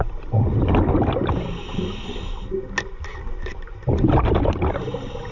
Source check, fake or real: real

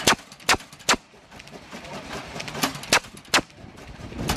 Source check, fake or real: real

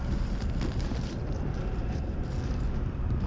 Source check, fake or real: real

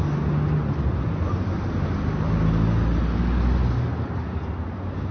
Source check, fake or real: real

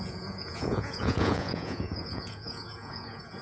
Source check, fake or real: fake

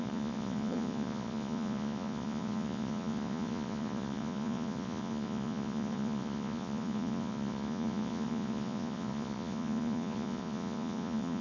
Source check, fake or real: fake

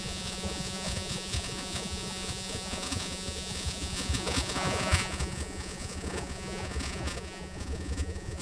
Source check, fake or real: fake